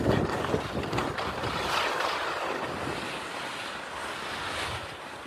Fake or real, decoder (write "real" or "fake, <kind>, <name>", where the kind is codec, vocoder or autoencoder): real